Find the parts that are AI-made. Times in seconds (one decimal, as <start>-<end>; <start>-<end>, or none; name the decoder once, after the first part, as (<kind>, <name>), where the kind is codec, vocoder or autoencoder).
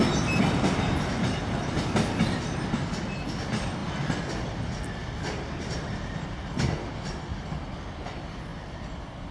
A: 5.0-6.0 (vocoder, BigVGAN v2); 8.5-9.3